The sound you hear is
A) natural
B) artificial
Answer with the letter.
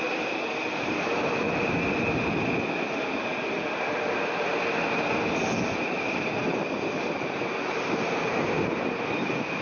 A